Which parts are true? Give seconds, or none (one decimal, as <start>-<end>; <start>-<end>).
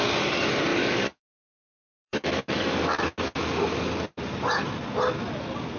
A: 0.0-0.7; 3.0-5.8